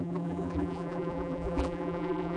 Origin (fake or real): fake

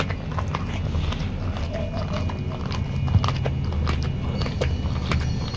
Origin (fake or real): real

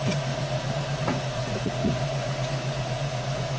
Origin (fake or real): fake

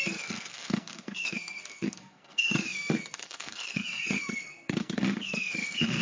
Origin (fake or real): fake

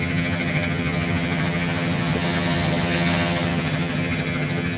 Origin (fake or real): fake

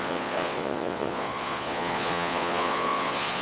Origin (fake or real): fake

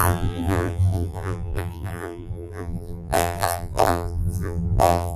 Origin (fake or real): fake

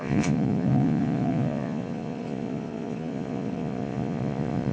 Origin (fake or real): fake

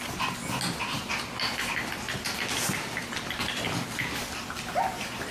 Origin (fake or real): real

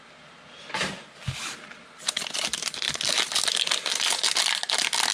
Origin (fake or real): real